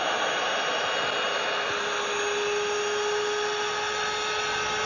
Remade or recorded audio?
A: recorded